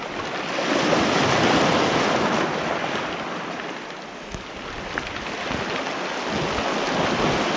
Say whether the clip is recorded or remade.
recorded